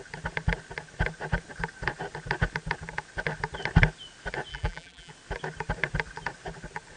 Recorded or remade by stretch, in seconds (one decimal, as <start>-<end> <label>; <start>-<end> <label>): 0.0-4.5 recorded; 4.5-5.1 remade; 5.1-7.0 recorded